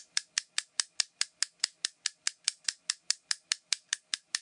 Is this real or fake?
real